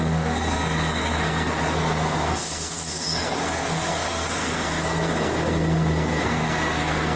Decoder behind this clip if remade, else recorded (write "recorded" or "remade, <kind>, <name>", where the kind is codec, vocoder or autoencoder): remade, codec, SNAC